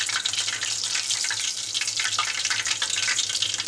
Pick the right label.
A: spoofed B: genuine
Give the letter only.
B